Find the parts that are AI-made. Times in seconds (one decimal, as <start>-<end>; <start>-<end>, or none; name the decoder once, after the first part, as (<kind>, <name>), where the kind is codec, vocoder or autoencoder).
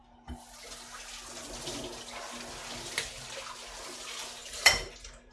4.4-5.3 (vocoder, BigVGAN v2)